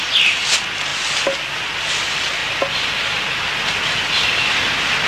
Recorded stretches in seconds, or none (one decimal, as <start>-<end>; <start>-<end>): 0.0-5.1